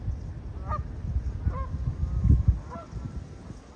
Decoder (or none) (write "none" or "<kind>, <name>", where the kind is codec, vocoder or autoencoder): none